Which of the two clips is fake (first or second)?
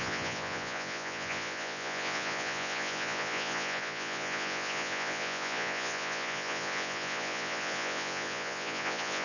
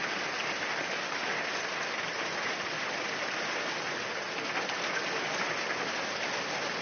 first